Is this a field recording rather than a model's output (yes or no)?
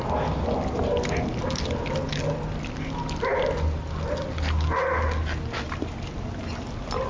yes